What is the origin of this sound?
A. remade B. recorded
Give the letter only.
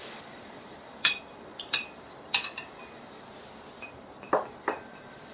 A